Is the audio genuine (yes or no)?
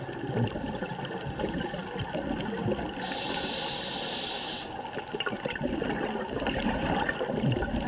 yes